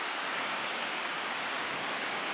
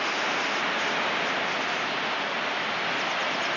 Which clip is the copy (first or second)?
first